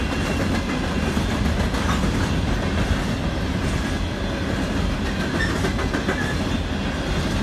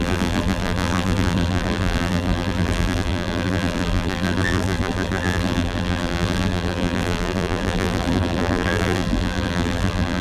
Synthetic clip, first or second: second